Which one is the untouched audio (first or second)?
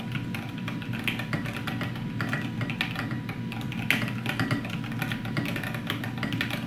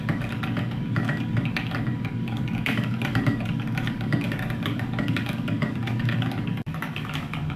first